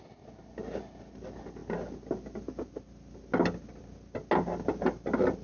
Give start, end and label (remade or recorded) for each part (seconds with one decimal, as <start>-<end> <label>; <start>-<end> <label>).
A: 0.0-5.4 recorded